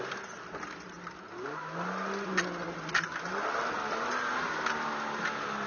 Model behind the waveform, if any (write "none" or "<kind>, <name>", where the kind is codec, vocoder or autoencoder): none